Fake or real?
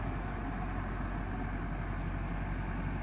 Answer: real